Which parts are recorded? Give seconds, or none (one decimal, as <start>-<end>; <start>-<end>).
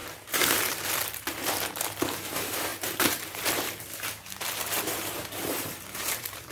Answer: none